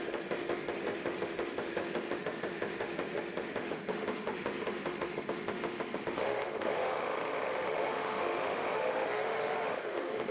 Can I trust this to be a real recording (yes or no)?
no